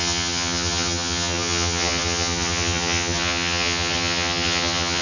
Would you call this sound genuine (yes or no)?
no